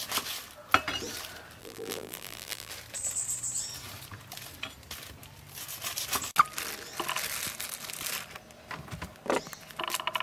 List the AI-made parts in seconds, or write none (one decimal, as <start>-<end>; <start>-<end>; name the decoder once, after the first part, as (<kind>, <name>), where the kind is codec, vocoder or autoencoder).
1.6-2.7 (vocoder, BigVGAN v2)